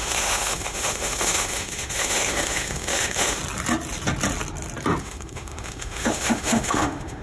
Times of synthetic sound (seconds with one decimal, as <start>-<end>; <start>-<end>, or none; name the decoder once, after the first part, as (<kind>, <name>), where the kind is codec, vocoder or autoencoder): 0.0-3.4 (autoencoder, DAC-VAE); 5.0-7.2